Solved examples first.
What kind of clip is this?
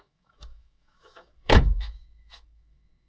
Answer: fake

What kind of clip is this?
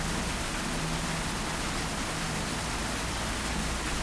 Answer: real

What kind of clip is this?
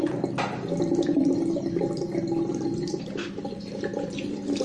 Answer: real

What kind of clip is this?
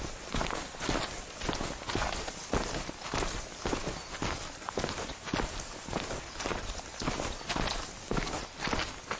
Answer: real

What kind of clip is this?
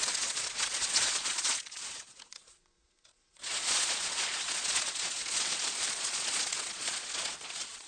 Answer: fake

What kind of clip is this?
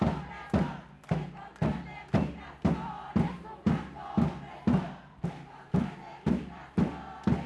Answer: real